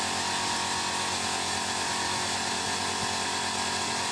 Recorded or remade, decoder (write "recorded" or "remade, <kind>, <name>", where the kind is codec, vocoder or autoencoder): recorded